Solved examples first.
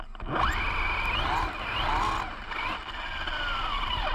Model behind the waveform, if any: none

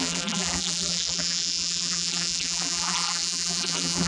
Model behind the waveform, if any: vocoder, BigVGAN v2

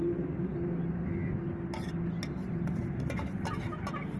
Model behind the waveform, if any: none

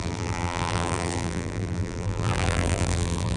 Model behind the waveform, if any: vocoder, BigVGAN v2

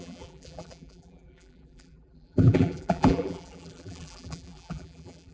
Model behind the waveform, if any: vocoder, BigVGAN v2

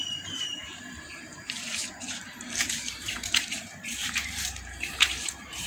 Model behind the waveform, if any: vocoder, BigVGAN v2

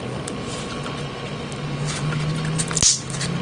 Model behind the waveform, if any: none